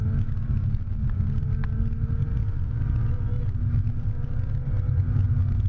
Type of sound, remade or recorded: recorded